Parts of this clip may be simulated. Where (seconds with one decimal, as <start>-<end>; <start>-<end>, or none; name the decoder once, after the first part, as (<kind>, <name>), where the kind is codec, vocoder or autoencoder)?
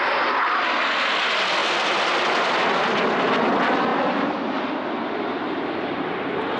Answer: none